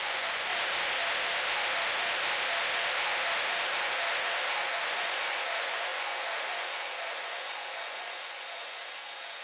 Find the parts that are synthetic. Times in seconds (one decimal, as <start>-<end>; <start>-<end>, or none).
0.0-0.5; 4.6-9.4